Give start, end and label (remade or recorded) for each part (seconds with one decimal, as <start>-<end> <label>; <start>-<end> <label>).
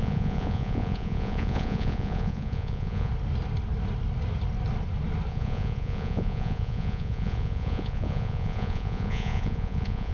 0.0-3.1 remade; 3.1-5.3 recorded; 5.3-10.1 remade